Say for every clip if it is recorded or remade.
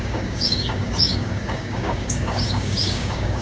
remade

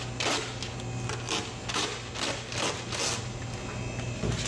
recorded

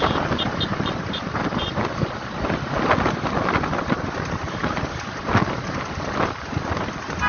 recorded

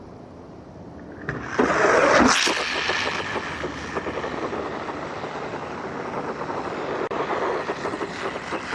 recorded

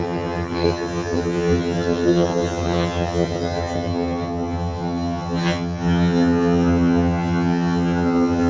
remade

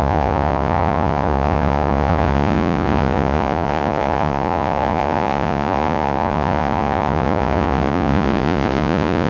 remade